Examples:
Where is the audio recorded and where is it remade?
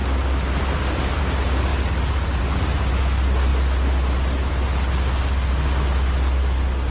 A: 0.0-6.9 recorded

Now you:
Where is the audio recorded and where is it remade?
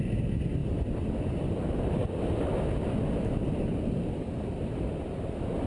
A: 0.0-5.7 recorded